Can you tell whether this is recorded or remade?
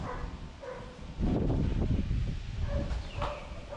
recorded